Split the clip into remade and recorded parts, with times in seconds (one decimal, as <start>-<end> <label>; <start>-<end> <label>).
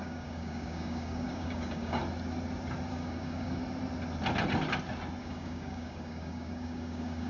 0.0-2.0 remade; 2.0-2.9 recorded; 2.9-3.6 remade; 3.6-5.2 recorded; 5.2-7.3 remade